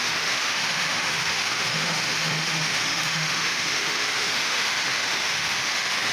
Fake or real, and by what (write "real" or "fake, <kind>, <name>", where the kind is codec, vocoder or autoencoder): fake, autoencoder, DAC-VAE